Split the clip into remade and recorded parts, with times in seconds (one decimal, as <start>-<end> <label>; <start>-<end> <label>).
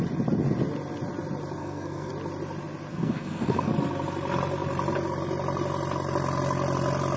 0.0-1.6 recorded; 1.6-2.1 remade; 2.1-2.9 recorded; 2.9-3.7 remade; 3.7-7.2 recorded